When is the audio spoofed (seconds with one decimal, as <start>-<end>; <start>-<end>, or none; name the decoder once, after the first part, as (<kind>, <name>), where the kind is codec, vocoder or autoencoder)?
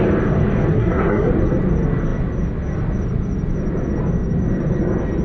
0.7-1.3 (codec, SNAC)